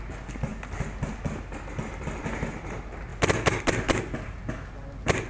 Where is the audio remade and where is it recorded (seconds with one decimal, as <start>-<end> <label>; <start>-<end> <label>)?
0.0-5.3 recorded